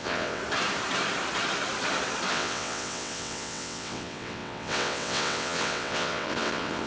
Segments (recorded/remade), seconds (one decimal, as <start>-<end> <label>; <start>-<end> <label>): 0.0-0.4 remade; 0.4-2.3 recorded; 2.3-6.9 remade